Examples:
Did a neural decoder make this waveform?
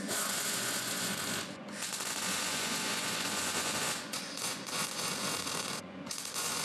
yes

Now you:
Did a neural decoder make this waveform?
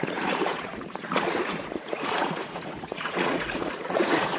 yes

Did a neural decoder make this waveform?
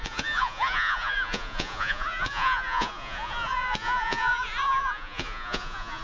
yes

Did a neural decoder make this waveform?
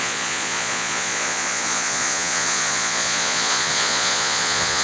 yes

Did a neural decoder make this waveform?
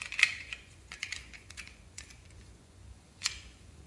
yes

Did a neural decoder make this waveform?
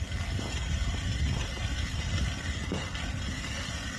no